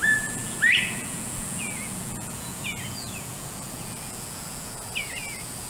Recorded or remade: remade